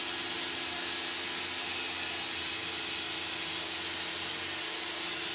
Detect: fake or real real